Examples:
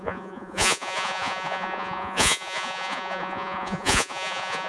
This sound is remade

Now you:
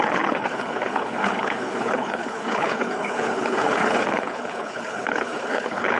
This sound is remade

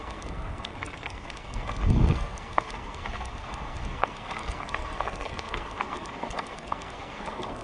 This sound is remade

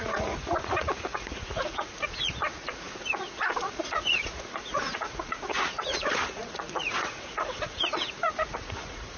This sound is remade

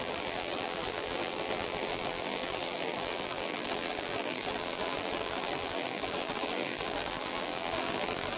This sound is remade